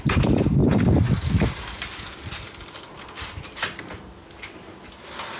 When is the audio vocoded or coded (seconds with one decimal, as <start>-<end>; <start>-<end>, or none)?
none